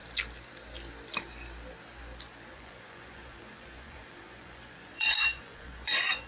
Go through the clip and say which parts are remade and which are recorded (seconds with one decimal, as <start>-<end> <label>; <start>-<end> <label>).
0.0-2.5 recorded; 2.5-6.3 remade